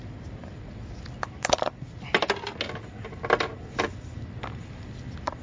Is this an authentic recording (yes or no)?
yes